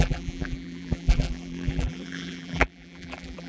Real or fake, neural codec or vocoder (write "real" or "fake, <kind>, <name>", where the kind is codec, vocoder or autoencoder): fake, vocoder, BigVGAN v2